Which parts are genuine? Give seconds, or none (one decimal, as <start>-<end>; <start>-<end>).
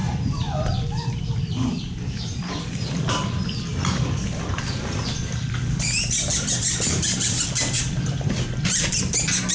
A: 3.0-3.7; 8.9-9.5